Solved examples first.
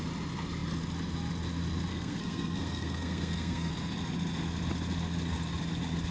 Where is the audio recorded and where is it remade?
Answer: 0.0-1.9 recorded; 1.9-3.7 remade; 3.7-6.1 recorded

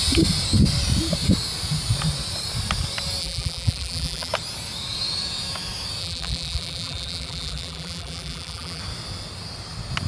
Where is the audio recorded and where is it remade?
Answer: 0.0-3.2 recorded; 3.2-4.3 remade; 4.3-6.0 recorded; 6.0-8.8 remade; 8.8-10.1 recorded

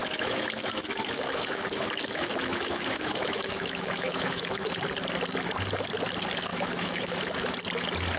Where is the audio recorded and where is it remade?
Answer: 0.0-4.8 remade; 4.8-6.5 recorded; 6.5-7.2 remade; 7.2-8.2 recorded

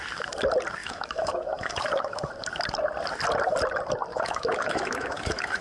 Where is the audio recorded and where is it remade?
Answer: 0.0-0.8 recorded; 0.8-2.3 remade; 2.3-4.1 recorded; 4.1-5.6 remade

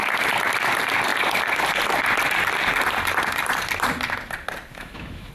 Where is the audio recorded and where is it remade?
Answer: 0.0-4.7 recorded; 4.7-5.3 remade

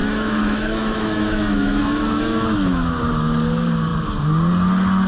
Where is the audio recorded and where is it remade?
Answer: 0.0-3.1 remade; 3.1-5.1 recorded

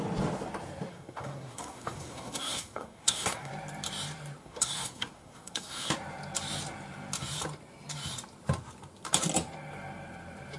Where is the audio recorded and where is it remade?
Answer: 0.0-0.9 recorded; 0.9-3.5 remade; 3.5-4.4 recorded; 4.4-5.9 remade; 5.9-10.6 recorded